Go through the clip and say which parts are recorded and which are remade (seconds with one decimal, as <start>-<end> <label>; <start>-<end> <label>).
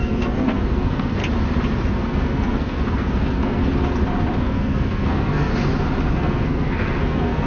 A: 0.0-1.2 remade; 1.2-1.9 recorded; 1.9-3.6 remade; 3.6-4.4 recorded; 4.4-5.5 remade; 5.5-6.1 recorded; 6.1-7.5 remade